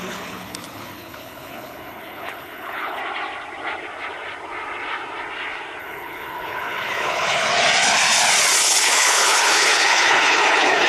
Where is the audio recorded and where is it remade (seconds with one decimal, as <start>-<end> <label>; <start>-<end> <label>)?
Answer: 0.0-3.0 remade; 3.0-5.8 recorded; 5.8-7.5 remade; 7.5-8.6 recorded; 8.6-10.9 remade